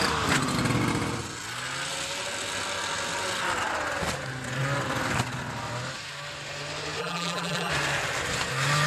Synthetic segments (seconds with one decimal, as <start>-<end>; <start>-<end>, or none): 7.0-7.7

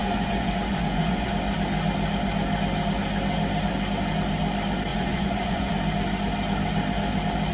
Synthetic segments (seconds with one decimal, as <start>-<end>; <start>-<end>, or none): 0.0-1.3; 4.9-5.7

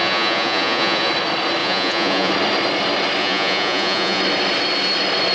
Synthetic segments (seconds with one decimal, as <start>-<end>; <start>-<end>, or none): 0.0-1.1; 1.6-2.3; 3.2-4.2

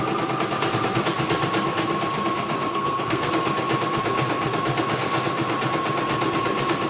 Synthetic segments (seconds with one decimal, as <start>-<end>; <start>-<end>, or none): 2.7-3.3

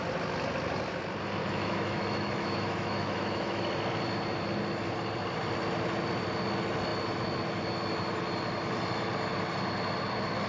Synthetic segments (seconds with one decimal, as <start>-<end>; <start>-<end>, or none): 1.4-3.6